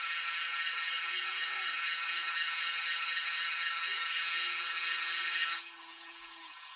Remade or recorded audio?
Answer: remade